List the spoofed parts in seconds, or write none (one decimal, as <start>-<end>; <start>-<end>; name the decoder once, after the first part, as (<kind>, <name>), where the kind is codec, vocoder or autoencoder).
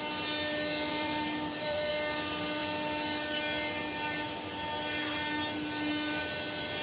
0.9-1.9 (vocoder, BigVGAN v2)